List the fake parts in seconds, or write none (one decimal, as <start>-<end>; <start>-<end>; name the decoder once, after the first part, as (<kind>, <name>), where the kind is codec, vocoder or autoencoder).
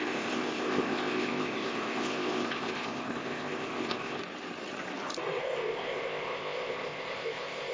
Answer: 0.0-4.2 (codec, ZipCodec); 5.4-7.7